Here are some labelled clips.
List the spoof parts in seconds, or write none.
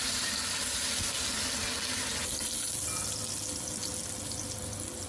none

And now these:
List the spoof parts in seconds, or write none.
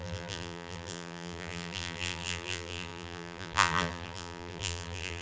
0.0-5.2 (vocoder, BigVGAN v2)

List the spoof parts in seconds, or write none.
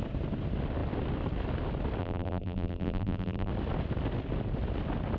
2.0-3.5 (vocoder, BigVGAN v2)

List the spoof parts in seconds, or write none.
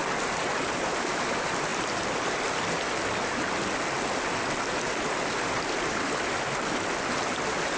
none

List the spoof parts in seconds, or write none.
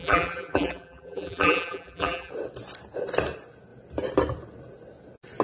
0.0-2.3 (vocoder, BigVGAN v2)